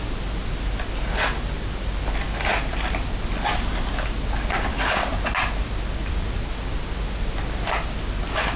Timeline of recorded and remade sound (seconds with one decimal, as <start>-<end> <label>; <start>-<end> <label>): 0.0-8.6 recorded